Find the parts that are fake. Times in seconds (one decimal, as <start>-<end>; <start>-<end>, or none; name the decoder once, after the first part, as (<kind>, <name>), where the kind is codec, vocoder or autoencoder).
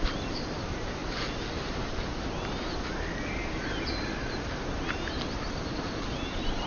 0.0-1.0 (vocoder, BigVGAN v2); 1.6-2.1; 5.1-6.7